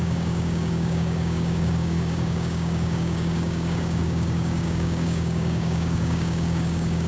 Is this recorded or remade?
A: remade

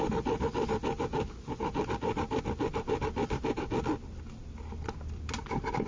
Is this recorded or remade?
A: recorded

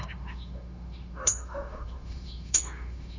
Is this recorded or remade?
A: remade